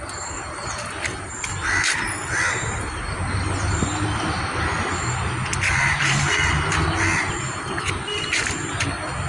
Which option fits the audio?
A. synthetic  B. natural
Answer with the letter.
B